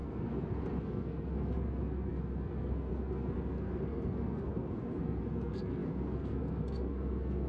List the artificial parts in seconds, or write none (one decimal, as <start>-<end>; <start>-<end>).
0.0-7.5